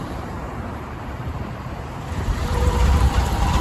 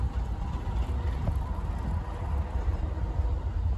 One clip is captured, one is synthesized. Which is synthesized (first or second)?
first